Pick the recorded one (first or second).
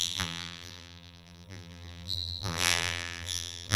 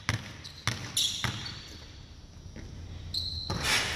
second